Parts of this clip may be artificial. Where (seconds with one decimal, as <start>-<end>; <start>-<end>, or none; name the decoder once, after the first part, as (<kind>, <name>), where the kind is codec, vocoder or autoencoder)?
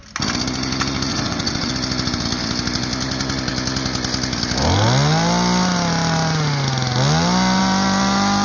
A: 1.1-1.7 (vocoder, WaveNeXt)